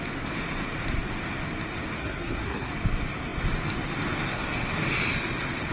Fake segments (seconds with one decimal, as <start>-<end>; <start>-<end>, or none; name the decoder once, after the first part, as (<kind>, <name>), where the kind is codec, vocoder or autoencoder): 2.0-2.7 (codec, SNAC)